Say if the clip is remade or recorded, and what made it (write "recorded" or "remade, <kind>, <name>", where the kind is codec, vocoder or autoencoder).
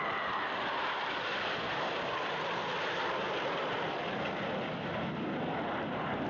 recorded